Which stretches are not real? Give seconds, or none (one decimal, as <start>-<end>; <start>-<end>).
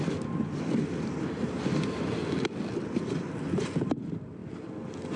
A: 0.0-2.2; 3.9-4.4